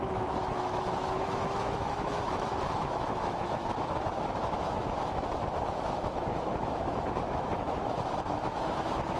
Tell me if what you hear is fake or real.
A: fake